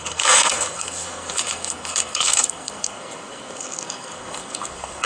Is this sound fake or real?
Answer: fake